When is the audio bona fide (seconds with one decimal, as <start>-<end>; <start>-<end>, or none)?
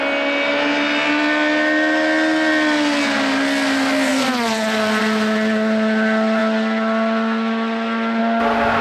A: 0.0-8.8